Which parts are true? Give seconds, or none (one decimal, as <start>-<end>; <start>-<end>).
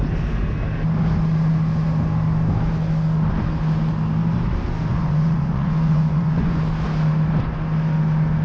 0.0-4.9; 6.6-8.4